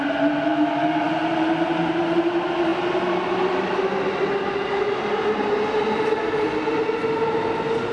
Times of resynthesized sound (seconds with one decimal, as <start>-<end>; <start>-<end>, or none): 0.5-1.1